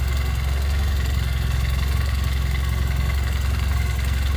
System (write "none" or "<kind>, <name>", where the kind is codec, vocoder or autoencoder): codec, SNAC